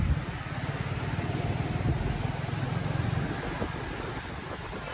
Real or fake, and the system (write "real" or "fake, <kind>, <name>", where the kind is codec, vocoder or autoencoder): real